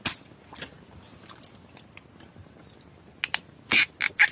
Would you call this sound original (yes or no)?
yes